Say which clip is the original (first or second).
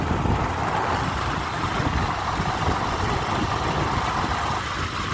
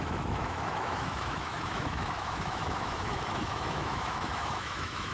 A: first